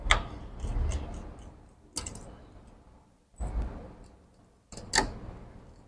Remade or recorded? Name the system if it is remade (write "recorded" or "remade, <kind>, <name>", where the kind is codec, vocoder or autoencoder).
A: recorded